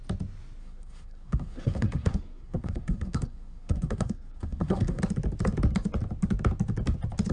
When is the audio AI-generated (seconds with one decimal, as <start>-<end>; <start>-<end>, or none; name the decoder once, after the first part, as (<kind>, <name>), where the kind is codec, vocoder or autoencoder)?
0.6-5.0 (codec, SNAC)